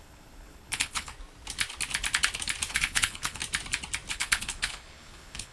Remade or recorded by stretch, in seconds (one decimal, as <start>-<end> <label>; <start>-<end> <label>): 0.0-1.1 remade; 1.1-2.7 recorded; 2.7-3.4 remade; 3.4-4.1 recorded; 4.1-5.5 remade